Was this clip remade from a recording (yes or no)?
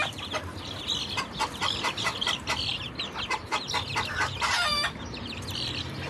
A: yes